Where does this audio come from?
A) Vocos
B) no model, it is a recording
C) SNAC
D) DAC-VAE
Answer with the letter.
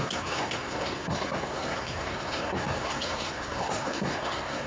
C